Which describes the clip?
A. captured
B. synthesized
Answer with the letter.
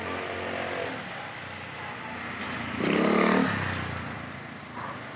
A